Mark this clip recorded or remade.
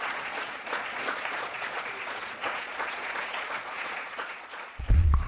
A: remade